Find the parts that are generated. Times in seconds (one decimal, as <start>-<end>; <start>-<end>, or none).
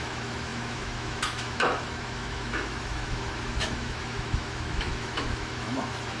0.0-6.2